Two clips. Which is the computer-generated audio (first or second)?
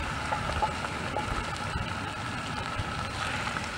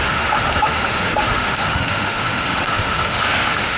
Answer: second